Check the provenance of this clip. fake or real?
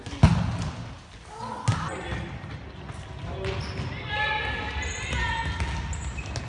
real